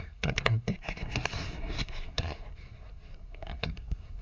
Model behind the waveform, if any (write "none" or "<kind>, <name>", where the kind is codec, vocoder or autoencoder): codec, SNAC